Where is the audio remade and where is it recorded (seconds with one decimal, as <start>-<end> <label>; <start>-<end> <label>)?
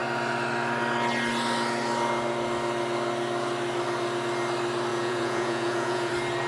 0.0-4.9 recorded; 4.9-6.1 remade; 6.1-6.5 recorded